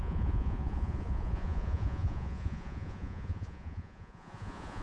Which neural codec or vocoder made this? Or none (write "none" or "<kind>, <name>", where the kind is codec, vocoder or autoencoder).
vocoder, Vocos